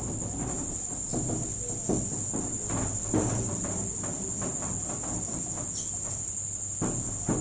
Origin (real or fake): real